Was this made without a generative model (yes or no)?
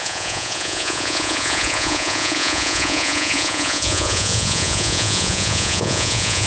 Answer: no